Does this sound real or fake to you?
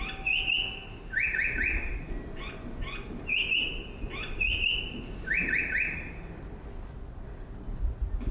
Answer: real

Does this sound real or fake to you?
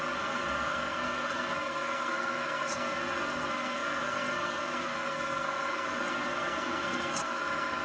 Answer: fake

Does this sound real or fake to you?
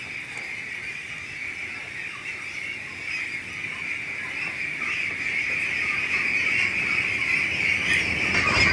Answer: real